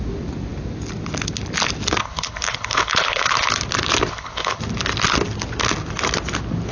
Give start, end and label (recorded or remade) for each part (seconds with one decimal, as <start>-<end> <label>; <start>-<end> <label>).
0.0-2.0 recorded; 2.0-3.5 remade; 3.5-4.1 recorded; 4.1-4.6 remade; 4.6-6.7 recorded